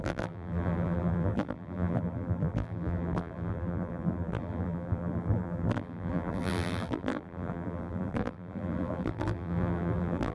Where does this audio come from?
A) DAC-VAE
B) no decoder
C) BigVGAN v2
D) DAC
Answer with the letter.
C